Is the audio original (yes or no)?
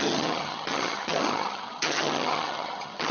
no